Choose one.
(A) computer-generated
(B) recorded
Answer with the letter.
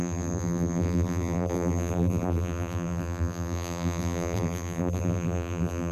A